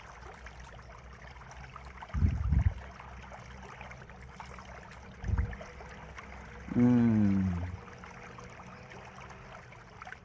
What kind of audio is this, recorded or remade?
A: recorded